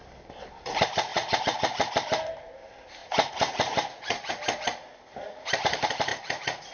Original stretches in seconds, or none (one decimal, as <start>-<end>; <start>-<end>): 0.0-1.1; 1.9-3.0; 4.3-6.1